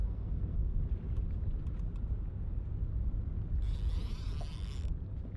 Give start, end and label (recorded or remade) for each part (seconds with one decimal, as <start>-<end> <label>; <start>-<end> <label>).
0.0-0.8 remade; 0.8-5.4 recorded